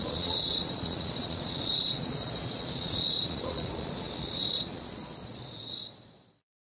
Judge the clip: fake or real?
fake